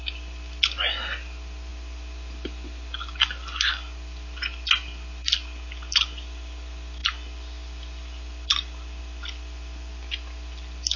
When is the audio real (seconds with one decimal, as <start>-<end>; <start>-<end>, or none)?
0.0-11.0